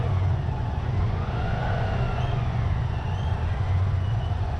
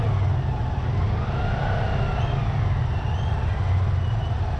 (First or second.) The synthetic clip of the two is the first